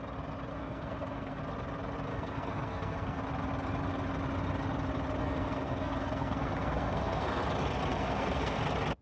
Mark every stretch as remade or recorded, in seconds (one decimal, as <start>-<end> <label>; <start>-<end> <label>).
0.0-0.5 recorded; 0.5-1.4 remade; 1.4-2.1 recorded; 2.1-3.2 remade; 3.2-5.2 recorded; 5.2-7.4 remade; 7.4-7.9 recorded; 7.9-8.6 remade; 8.6-9.0 recorded